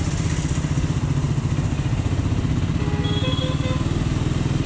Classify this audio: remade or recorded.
recorded